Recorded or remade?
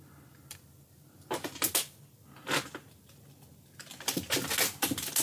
recorded